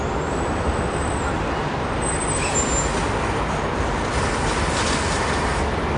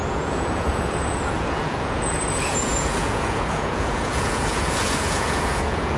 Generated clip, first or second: second